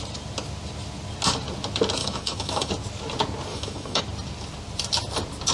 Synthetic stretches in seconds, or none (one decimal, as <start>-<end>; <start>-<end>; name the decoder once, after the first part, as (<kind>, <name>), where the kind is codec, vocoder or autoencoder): 2.0-2.7 (autoencoder, DAC-VAE); 3.5-4.0